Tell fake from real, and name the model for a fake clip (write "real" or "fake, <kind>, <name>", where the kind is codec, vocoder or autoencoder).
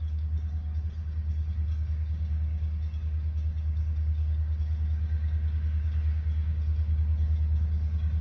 fake, codec, DAC